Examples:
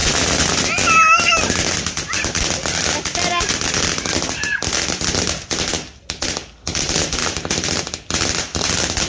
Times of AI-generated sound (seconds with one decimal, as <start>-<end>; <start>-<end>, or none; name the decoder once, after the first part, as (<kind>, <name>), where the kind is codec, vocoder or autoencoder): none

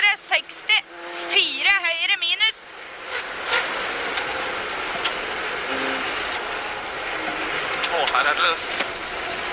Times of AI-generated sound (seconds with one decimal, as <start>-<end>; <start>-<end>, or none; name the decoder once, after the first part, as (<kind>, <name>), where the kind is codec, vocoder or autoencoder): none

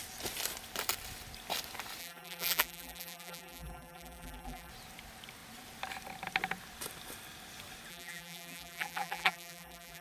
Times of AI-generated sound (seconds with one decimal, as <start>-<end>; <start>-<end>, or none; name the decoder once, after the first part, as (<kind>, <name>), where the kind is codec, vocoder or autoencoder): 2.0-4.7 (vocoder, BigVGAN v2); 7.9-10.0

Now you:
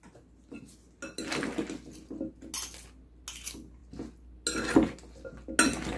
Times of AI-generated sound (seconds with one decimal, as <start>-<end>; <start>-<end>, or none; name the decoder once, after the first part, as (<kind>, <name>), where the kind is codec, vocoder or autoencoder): none

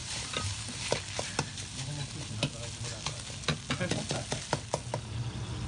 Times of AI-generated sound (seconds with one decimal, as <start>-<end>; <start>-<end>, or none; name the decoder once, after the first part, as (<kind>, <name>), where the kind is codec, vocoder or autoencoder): 0.0-0.8 (vocoder, BigVGAN v2)

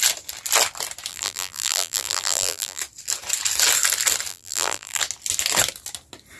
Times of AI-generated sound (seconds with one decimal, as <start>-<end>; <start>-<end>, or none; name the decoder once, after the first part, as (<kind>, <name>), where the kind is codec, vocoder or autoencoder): 1.1-2.8 (vocoder, BigVGAN v2); 4.3-5.0

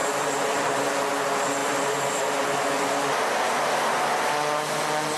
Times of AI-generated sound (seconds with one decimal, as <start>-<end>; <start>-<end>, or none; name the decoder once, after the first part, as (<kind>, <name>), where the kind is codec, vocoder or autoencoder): 0.0-0.8 (vocoder, BigVGAN v2); 1.6-2.2